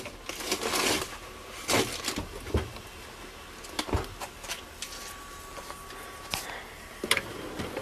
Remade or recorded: recorded